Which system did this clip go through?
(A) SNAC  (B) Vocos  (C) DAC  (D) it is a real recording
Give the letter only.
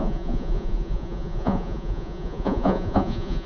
B